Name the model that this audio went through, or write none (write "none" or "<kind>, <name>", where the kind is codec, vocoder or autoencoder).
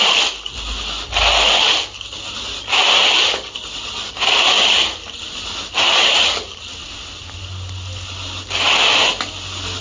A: none